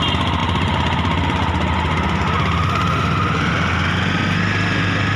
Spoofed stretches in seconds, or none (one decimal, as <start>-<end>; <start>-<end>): none